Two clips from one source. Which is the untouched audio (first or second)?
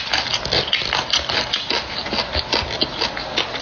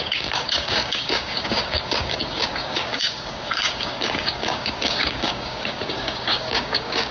first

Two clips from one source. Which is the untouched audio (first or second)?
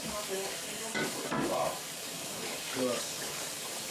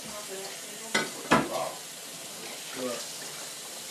second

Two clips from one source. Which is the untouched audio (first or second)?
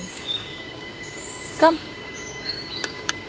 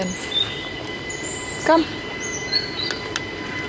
second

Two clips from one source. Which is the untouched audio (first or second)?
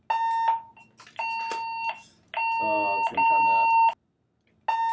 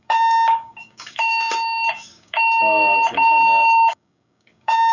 first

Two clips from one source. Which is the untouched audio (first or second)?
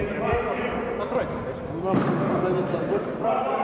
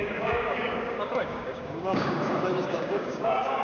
first